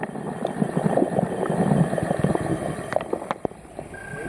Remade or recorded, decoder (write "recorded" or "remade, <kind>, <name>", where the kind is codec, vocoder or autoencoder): recorded